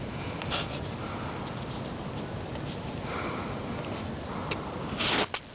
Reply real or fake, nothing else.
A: real